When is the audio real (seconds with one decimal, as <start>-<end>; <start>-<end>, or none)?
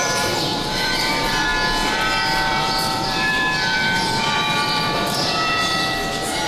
1.5-2.5